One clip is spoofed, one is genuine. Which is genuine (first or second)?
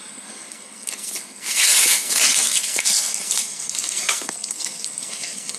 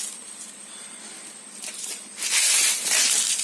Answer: second